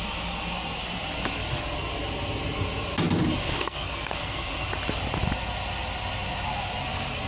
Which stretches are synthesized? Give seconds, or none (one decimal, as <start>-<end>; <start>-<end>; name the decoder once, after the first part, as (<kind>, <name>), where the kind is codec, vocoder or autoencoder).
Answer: 3.5-4.5 (codec, SNAC)